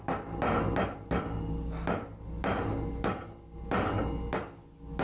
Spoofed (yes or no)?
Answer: no